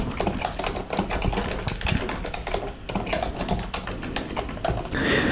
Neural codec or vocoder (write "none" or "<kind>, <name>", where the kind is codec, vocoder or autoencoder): none